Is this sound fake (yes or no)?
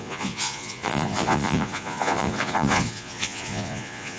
yes